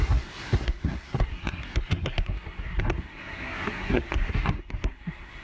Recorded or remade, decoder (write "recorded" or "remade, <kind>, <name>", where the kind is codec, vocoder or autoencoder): remade, codec, SNAC